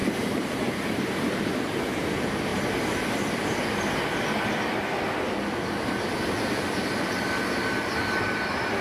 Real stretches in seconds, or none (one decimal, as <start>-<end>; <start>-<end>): 2.1-8.8